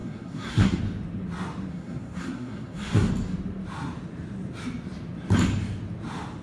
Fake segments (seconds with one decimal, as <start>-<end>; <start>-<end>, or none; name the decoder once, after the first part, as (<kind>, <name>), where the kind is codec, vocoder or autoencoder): 0.0-0.8 (codec, SNAC); 1.7-3.1